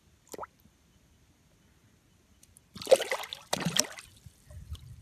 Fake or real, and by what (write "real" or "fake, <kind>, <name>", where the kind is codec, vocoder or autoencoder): real